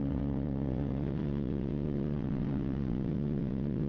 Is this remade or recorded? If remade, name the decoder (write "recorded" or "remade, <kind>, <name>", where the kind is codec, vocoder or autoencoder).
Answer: remade, vocoder, WaveNeXt